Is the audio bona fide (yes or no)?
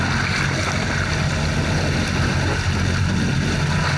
yes